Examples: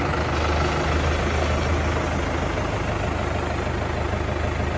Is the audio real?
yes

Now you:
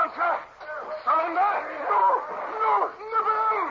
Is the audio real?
yes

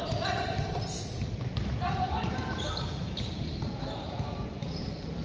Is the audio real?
no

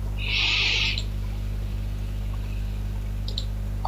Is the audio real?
no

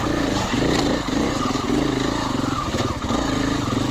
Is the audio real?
yes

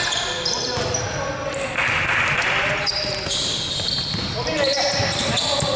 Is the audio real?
yes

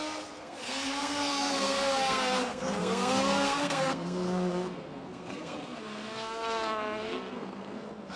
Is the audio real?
no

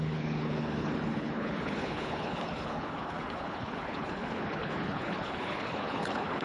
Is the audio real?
no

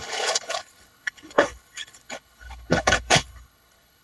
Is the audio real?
no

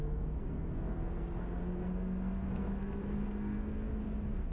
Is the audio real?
no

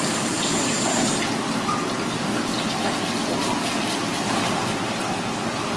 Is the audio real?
yes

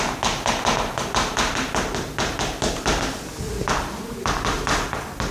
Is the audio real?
yes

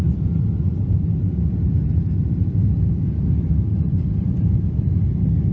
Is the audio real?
yes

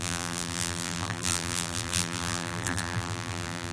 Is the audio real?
no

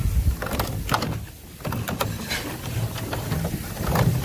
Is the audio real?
yes